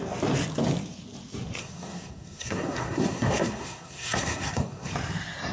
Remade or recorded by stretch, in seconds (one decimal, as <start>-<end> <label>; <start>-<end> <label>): 0.0-1.6 recorded; 1.6-4.9 remade; 4.9-5.5 recorded